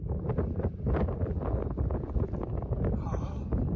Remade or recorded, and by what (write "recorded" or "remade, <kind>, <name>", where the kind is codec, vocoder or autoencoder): recorded